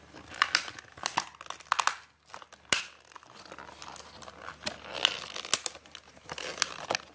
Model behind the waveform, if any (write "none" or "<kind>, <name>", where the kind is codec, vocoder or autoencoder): none